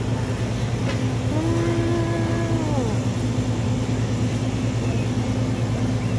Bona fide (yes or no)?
yes